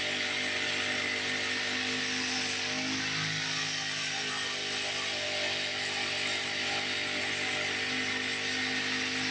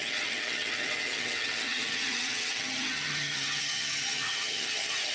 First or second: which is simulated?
second